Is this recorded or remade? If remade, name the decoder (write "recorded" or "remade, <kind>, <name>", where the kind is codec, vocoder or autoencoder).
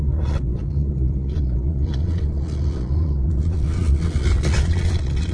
remade, vocoder, Vocos